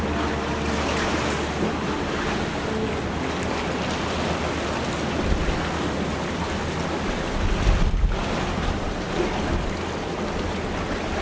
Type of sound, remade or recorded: recorded